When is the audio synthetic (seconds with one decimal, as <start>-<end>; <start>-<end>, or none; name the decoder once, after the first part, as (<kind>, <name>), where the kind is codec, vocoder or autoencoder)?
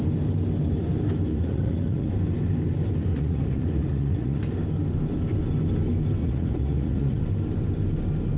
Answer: 1.3-2.1 (vocoder, Vocos); 3.1-4.4; 6.2-7.2